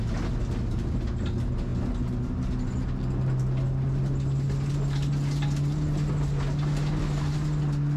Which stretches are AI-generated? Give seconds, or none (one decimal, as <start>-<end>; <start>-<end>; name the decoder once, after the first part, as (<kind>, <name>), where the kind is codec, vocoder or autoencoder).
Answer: none